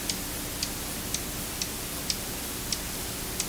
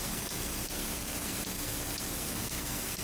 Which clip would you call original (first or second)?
first